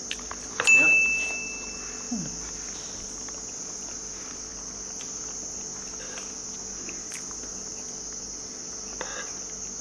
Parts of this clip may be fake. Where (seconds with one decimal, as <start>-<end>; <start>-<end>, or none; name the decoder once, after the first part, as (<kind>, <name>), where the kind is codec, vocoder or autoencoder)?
none